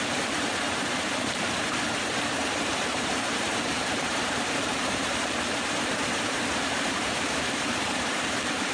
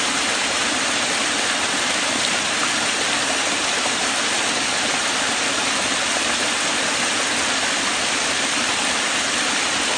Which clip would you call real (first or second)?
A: second